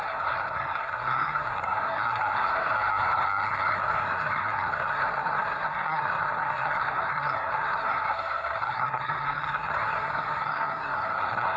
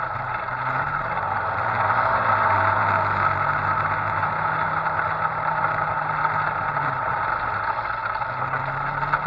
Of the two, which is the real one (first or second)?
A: second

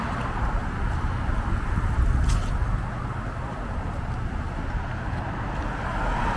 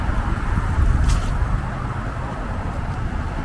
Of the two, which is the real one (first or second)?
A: first